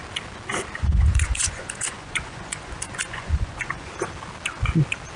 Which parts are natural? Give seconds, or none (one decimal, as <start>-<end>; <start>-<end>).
0.0-0.8; 3.9-5.2